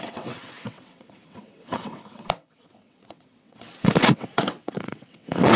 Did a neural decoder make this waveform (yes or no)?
yes